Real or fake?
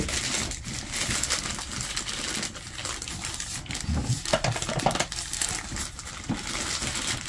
real